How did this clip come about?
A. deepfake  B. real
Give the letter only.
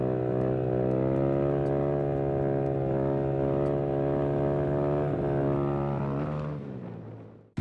B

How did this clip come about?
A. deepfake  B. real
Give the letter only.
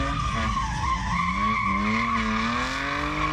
B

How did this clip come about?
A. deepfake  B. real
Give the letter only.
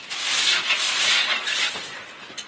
A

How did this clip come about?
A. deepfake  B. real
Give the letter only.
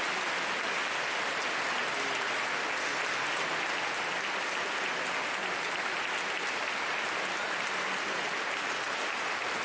B